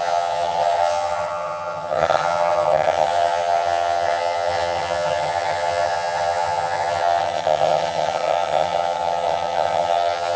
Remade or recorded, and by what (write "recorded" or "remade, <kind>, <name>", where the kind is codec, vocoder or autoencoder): remade, vocoder, HiFi-GAN